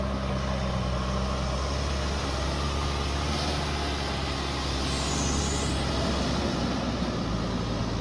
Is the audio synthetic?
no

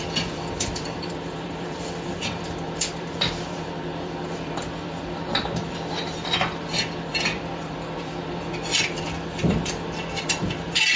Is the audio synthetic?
yes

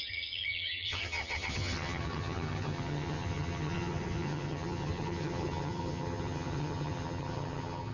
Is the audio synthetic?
yes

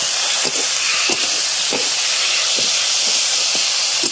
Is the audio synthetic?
no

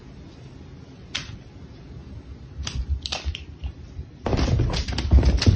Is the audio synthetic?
yes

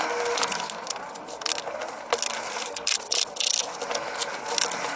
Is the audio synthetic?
no